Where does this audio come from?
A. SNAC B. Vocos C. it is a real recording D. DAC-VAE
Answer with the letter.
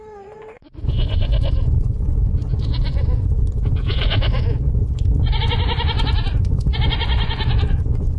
B